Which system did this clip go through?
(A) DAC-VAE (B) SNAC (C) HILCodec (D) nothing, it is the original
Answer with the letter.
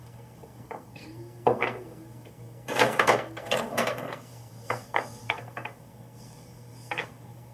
B